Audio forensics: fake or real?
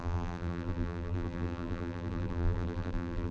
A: fake